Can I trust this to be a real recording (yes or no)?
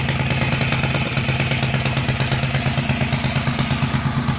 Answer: yes